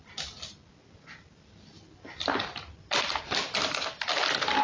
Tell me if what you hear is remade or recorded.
recorded